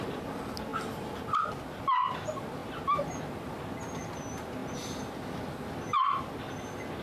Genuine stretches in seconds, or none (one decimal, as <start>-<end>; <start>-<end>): 0.0-7.0